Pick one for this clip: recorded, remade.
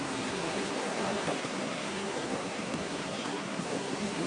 remade